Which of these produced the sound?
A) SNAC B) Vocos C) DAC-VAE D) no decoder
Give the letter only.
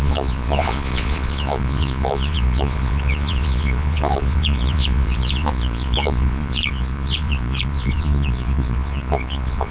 B